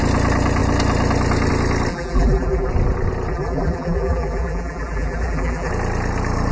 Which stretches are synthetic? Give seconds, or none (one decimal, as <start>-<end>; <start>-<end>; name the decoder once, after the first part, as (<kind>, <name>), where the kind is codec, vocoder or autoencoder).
1.9-2.7 (vocoder, BigVGAN v2); 3.3-5.7